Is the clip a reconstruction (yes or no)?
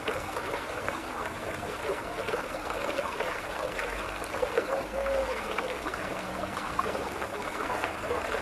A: yes